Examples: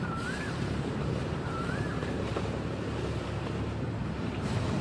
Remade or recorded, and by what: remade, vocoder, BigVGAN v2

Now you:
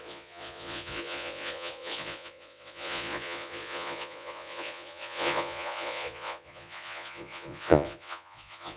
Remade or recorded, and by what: remade, vocoder, Vocos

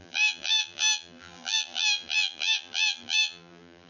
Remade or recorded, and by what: remade, vocoder, BigVGAN v2